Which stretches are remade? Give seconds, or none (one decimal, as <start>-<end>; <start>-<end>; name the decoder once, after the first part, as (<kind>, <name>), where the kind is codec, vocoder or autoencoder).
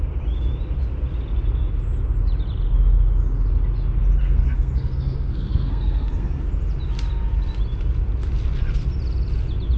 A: 4.2-6.5 (codec, SNAC)